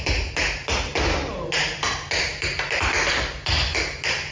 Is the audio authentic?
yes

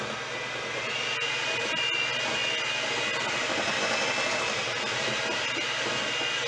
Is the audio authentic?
yes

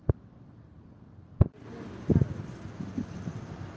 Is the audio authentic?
yes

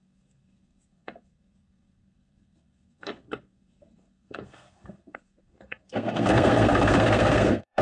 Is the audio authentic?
no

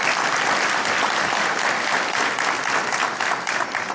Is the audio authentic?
yes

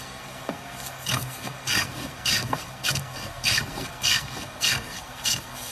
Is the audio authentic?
no